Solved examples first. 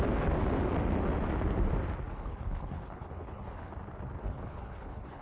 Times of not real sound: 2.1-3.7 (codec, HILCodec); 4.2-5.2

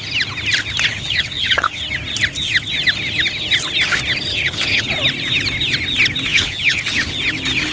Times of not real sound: 0.9-1.8 (codec, HILCodec); 4.3-4.9; 6.3-7.1

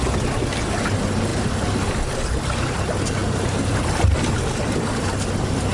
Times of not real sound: none

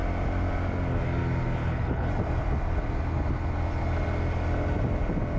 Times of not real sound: 1.6-2.1 (codec, HILCodec)

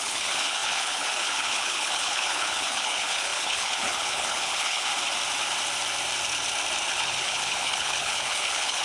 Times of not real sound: 0.0-4.9 (codec, HILCodec); 6.9-8.8

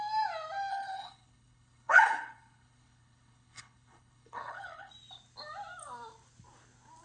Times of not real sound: 0.7-4.9 (codec, HILCodec)

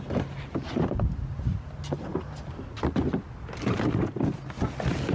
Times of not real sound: none